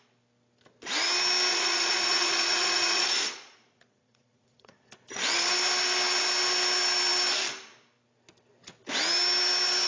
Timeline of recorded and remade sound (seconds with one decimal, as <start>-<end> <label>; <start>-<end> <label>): 0.0-1.5 recorded; 1.5-5.5 remade; 5.5-9.9 recorded